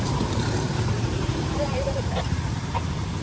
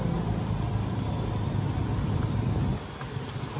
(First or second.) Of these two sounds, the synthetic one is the first